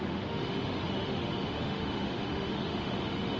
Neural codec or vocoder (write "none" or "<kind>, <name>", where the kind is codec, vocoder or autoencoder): autoencoder, DAC-VAE